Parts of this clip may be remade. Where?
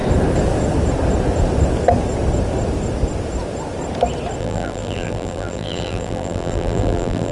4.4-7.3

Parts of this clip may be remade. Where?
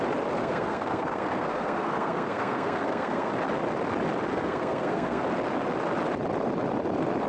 0.4-3.3; 4.3-5.2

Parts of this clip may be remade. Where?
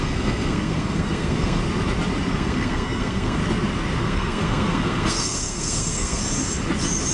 0.0-1.6; 2.3-3.4; 4.0-6.2